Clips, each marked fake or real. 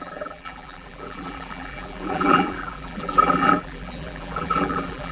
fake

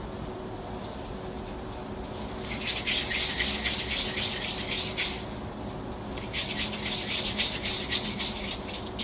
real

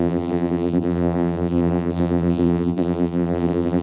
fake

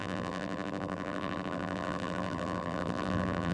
fake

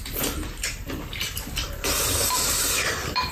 fake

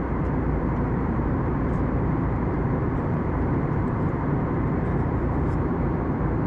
fake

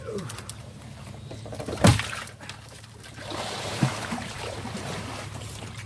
fake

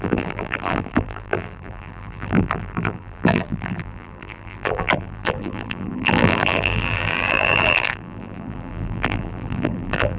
fake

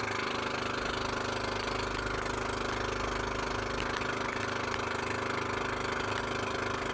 real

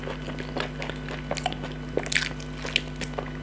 real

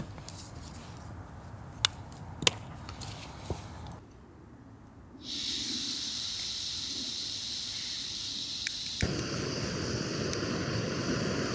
real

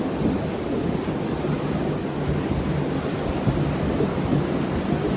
real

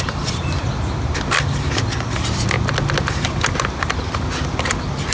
real